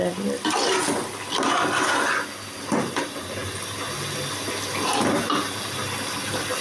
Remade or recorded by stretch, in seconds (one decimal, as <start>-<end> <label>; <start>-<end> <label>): 0.0-6.6 recorded